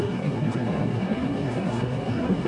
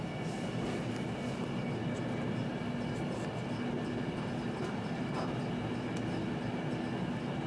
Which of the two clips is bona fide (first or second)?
second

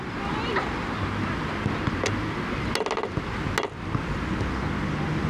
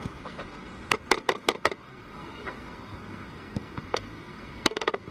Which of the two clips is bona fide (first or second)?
first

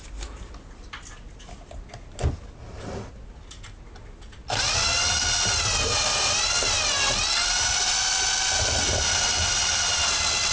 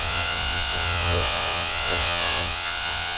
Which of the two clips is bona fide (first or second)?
first